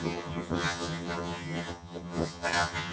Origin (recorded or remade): remade